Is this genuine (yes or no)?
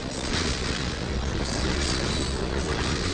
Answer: no